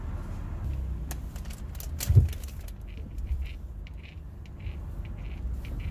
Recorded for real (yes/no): yes